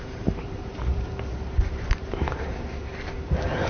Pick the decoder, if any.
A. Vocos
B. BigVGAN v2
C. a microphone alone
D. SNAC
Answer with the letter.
B